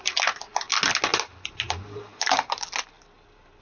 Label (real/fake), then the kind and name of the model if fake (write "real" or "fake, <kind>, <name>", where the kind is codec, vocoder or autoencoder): real